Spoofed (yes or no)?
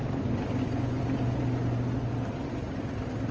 no